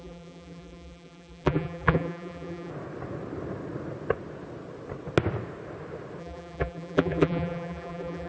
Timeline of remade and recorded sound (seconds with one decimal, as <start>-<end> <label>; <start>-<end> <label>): 0.0-2.7 remade; 2.7-6.2 recorded; 6.2-8.3 remade